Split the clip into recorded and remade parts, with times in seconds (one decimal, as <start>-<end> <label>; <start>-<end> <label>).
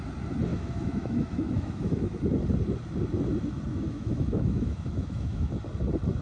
0.0-0.5 recorded; 0.5-2.2 remade; 2.2-3.7 recorded; 3.7-5.5 remade; 5.5-6.2 recorded